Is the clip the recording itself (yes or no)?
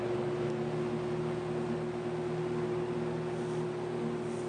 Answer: yes